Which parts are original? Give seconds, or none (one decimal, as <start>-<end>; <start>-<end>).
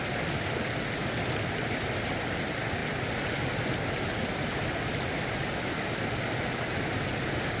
0.0-7.6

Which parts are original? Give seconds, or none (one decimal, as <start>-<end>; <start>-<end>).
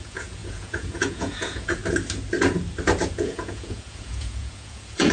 1.8-3.1